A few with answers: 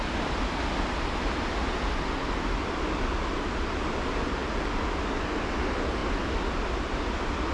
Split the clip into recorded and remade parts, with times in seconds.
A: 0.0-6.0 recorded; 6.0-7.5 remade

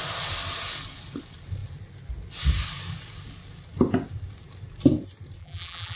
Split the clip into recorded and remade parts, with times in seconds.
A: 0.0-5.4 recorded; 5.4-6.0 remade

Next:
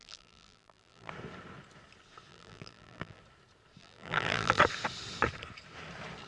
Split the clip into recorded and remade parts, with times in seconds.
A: 0.0-1.1 remade; 1.1-2.3 recorded; 2.3-3.2 remade; 3.2-3.8 recorded; 3.8-4.6 remade; 4.6-6.3 recorded

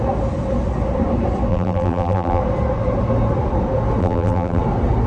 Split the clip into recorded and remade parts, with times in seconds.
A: 0.0-1.5 recorded; 1.5-2.4 remade; 2.4-4.0 recorded; 4.0-4.6 remade; 4.6-5.1 recorded